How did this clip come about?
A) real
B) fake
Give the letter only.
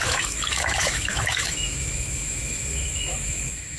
B